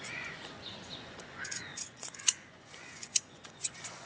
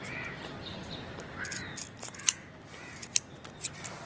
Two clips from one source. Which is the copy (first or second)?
first